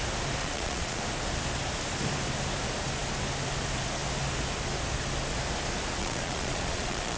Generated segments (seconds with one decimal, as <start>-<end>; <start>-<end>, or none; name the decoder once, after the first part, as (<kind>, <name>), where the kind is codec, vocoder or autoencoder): 0.4-1.0 (vocoder, Vocos); 6.0-7.2